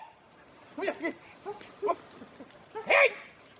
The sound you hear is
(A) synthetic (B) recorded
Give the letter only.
B